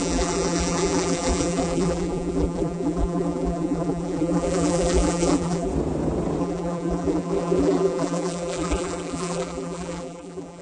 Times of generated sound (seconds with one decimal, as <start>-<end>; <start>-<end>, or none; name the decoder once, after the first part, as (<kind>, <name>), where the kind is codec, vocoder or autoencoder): 0.0-5.7 (vocoder, BigVGAN v2); 6.4-10.6